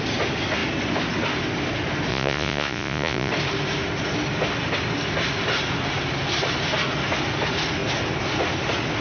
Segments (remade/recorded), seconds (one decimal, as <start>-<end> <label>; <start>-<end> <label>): 0.0-2.1 recorded; 2.1-3.3 remade; 3.3-9.0 recorded

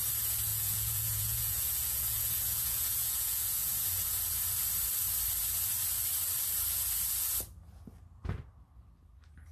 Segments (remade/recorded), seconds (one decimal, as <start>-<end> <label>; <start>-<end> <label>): 0.0-0.5 recorded; 0.5-4.2 remade; 4.2-9.5 recorded

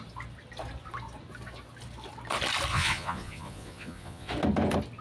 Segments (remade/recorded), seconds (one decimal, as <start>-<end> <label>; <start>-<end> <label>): 0.0-2.7 recorded; 2.7-4.3 remade; 4.3-5.0 recorded